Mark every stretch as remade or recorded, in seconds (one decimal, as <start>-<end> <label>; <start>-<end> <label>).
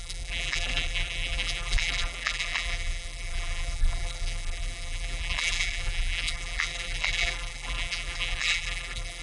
0.0-9.2 remade